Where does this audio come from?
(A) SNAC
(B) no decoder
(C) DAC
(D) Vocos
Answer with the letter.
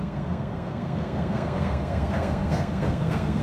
A